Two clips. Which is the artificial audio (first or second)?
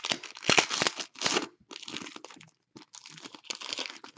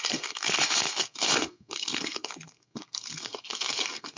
second